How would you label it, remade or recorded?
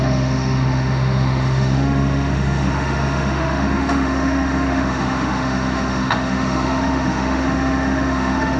remade